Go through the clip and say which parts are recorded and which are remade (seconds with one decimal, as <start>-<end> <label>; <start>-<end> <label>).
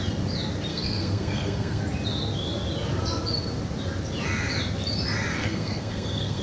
0.0-0.7 recorded; 0.7-1.8 remade; 1.8-5.3 recorded; 5.3-6.4 remade